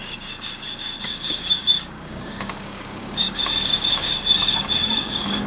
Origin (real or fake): fake